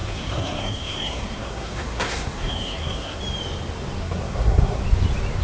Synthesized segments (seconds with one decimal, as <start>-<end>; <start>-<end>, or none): 0.0-3.2; 4.0-4.8